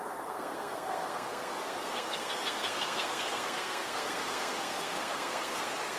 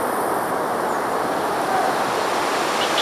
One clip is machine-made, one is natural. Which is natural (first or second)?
second